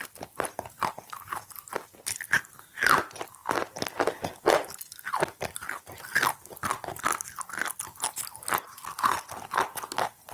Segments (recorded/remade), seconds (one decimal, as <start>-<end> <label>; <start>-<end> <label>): 0.0-10.3 recorded